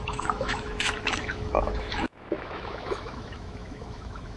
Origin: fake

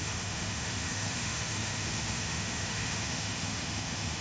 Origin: fake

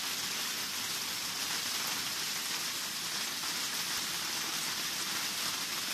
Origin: real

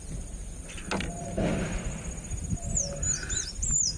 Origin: real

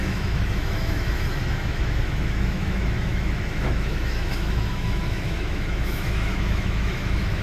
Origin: fake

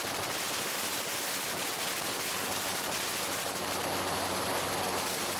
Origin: real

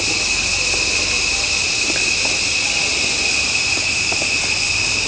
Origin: real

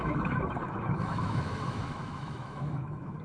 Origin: fake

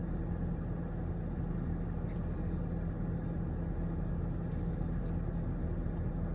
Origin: real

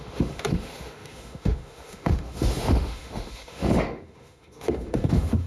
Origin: fake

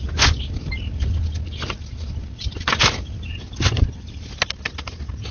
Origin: real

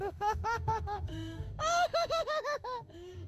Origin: fake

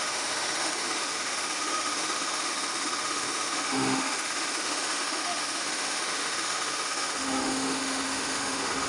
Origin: fake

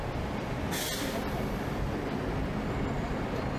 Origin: real